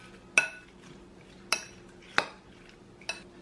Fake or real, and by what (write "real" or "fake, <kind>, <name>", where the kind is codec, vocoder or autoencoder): real